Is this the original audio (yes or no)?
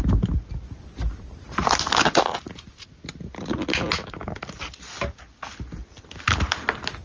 yes